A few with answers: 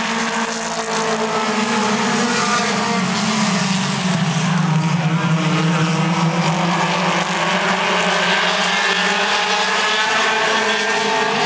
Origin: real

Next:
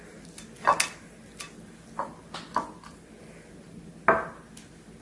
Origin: real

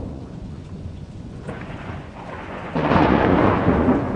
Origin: fake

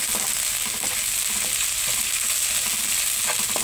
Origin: real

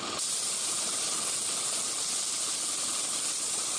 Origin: real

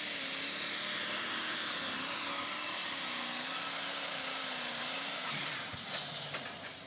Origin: real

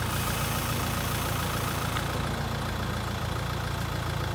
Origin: real